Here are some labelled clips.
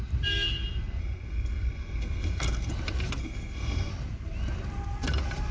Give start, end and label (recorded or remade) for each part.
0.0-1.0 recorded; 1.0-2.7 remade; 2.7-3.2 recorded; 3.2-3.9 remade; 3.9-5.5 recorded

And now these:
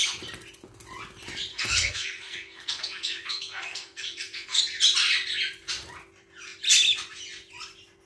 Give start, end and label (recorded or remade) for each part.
0.0-1.5 recorded; 1.5-4.6 remade; 4.6-8.1 recorded